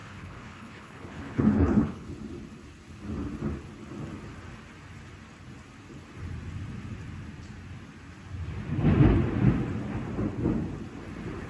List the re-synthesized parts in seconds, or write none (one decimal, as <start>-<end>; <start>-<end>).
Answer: 0.0-2.1